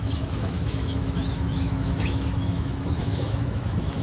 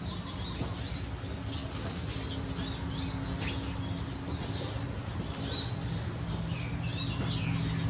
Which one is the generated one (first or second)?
first